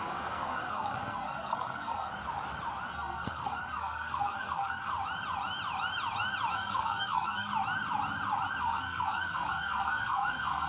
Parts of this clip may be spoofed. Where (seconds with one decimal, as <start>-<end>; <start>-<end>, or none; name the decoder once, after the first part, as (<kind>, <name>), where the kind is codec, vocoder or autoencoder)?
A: 0.0-2.1 (codec, SNAC); 2.9-4.9; 6.5-7.5; 8.6-10.7